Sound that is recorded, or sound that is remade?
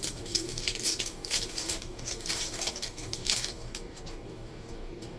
remade